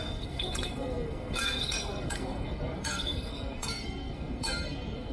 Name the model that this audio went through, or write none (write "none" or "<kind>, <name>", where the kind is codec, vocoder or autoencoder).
codec, SNAC